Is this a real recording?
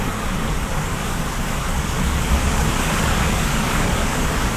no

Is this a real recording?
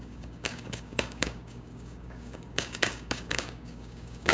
no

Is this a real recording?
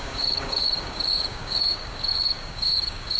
no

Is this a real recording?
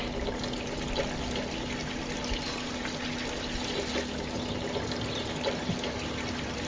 yes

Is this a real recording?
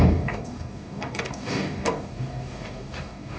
no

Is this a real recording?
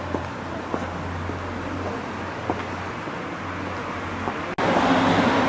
yes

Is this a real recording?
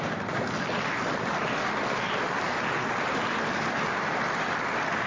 yes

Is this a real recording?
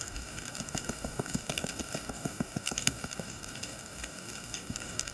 no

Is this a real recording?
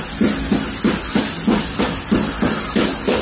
yes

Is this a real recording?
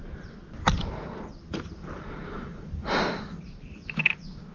yes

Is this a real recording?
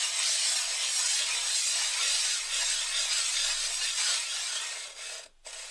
yes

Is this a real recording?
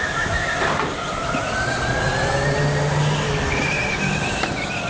yes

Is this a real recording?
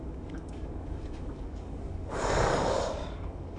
no